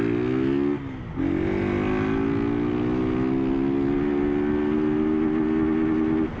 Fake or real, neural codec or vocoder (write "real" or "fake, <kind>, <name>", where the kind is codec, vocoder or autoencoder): real